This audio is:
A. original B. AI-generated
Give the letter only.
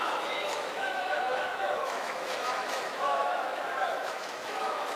B